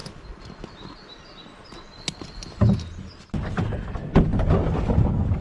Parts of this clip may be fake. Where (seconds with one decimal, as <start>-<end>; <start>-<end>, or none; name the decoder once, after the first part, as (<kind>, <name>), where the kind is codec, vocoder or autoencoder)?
none